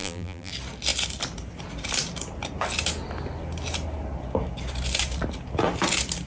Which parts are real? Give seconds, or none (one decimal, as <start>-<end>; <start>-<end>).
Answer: 0.5-6.3